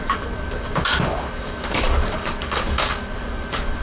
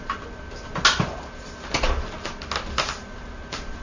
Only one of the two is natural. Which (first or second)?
second